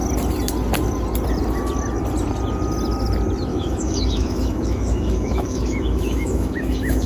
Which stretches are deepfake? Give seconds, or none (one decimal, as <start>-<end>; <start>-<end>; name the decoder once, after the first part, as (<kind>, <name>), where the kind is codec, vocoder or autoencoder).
3.5-7.1 (autoencoder, DAC-VAE)